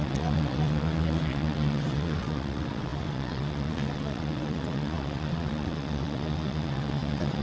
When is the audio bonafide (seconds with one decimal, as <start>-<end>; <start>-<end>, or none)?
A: none